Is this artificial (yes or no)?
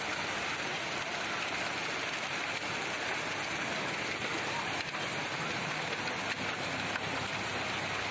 no